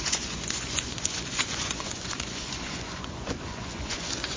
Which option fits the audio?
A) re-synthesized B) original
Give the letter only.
A